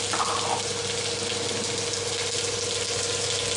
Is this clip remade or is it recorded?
recorded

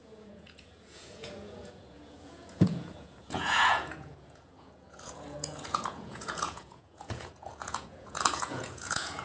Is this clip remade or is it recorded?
remade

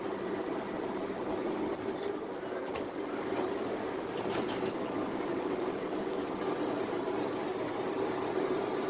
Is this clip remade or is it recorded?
recorded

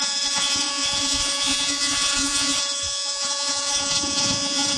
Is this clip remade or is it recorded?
remade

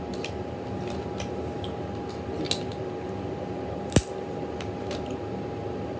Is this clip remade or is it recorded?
recorded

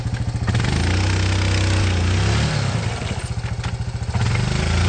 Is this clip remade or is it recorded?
recorded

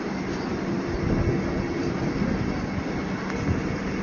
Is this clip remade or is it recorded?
recorded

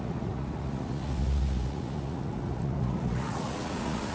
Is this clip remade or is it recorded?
remade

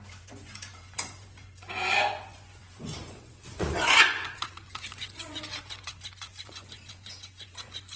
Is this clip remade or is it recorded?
remade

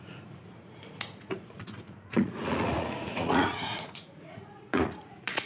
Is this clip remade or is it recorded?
remade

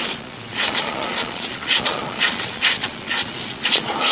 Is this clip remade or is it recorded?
remade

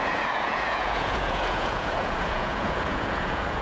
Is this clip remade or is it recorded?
remade